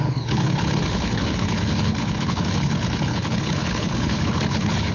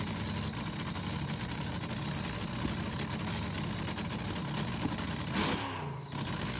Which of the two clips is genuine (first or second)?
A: second